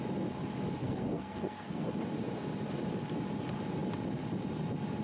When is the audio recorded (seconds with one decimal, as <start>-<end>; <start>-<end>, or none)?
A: 0.0-0.8; 1.9-5.0